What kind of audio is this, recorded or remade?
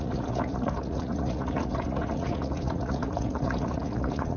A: remade